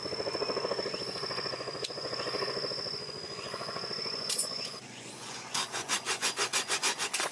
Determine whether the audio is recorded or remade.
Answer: remade